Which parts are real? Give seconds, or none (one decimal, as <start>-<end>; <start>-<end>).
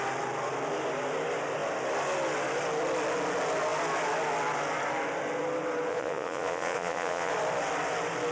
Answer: 0.0-5.9; 7.3-8.3